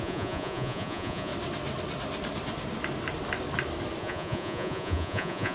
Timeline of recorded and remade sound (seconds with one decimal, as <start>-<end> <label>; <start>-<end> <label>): 0.0-1.3 remade; 1.3-4.0 recorded; 4.0-5.5 remade